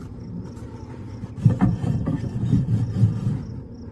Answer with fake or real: fake